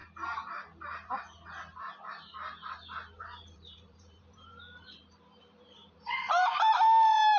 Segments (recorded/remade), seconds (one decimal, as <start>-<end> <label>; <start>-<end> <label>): 0.0-3.1 recorded; 3.1-7.4 remade